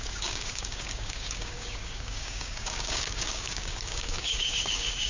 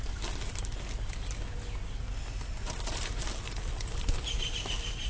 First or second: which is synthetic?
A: first